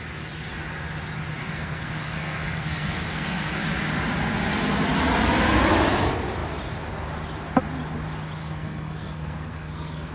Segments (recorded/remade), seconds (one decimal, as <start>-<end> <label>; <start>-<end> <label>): 0.0-1.4 recorded; 1.4-3.6 remade; 3.6-8.4 recorded; 8.4-10.1 remade